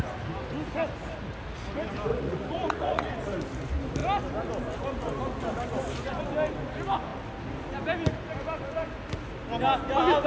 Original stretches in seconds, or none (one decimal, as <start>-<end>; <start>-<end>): 0.0-2.1; 3.1-10.3